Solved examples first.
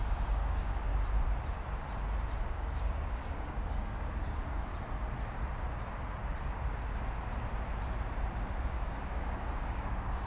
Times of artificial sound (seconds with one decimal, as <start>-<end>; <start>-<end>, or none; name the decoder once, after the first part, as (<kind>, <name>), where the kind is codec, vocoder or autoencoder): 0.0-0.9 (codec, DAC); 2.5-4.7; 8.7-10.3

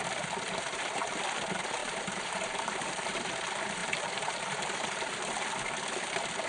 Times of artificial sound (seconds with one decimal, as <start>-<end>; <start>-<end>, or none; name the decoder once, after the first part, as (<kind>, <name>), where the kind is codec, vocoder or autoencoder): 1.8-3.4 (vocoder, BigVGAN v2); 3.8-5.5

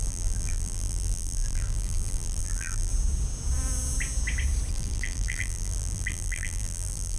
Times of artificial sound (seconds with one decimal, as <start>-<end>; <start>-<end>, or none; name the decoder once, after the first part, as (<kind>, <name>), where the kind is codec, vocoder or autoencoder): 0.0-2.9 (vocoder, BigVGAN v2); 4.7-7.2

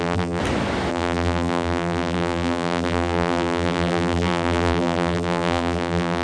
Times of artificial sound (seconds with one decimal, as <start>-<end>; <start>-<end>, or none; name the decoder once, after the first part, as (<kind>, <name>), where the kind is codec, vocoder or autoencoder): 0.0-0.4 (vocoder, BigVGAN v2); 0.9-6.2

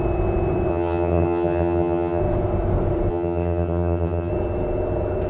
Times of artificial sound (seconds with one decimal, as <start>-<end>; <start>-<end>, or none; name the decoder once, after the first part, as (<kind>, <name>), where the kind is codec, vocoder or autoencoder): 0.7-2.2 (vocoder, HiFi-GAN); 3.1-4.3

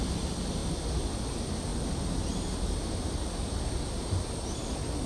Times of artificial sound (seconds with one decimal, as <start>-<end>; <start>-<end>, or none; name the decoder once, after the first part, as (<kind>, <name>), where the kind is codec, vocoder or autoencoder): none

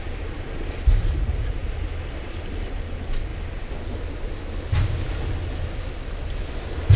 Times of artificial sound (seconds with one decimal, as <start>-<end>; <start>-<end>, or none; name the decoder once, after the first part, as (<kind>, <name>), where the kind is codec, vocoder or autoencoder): none

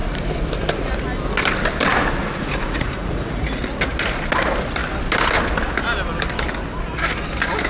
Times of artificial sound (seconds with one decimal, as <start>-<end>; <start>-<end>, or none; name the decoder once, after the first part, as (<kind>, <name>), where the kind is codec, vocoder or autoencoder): 2.2-3.6 (vocoder, Vocos)